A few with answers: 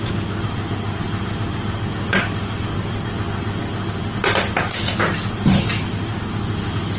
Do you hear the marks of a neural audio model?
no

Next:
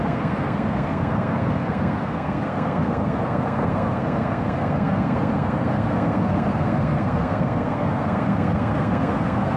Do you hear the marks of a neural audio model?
yes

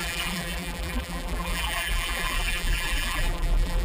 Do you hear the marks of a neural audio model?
yes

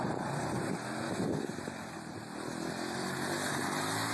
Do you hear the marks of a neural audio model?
no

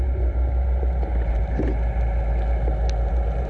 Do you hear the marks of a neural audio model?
no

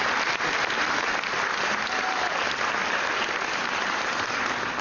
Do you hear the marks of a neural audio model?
no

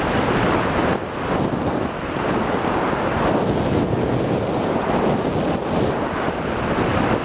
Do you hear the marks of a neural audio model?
no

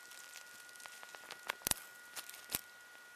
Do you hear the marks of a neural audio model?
no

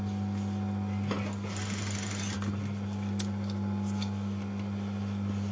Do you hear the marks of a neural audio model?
no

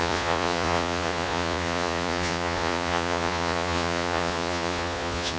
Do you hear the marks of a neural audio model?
yes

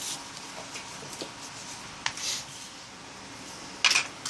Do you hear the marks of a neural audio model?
no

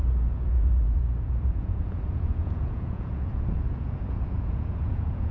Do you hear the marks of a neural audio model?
yes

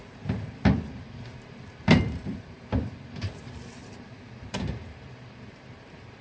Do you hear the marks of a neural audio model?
yes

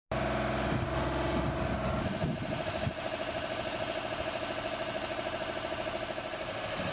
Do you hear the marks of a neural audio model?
no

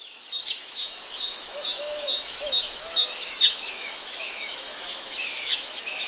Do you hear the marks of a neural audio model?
yes